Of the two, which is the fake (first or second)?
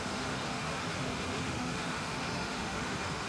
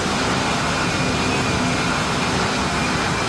first